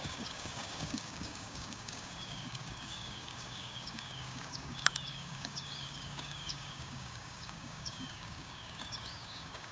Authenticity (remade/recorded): remade